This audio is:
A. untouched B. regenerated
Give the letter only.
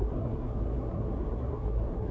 B